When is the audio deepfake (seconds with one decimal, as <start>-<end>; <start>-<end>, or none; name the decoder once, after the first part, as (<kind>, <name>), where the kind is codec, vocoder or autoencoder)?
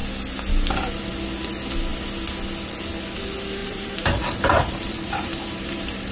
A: 3.6-6.1 (vocoder, BigVGAN v2)